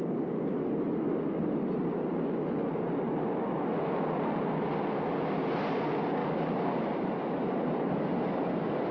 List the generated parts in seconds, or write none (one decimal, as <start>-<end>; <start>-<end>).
6.2-7.2